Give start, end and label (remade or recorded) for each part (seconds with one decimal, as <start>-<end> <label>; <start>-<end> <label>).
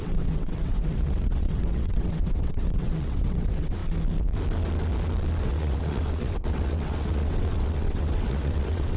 0.0-3.8 remade; 3.8-5.4 recorded; 5.4-9.0 remade